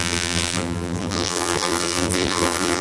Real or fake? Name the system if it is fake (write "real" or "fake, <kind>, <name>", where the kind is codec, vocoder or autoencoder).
fake, vocoder, BigVGAN v2